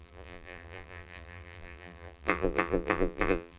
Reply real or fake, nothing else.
fake